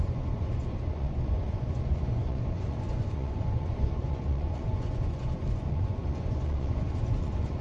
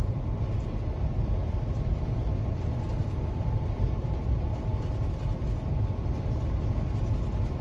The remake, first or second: first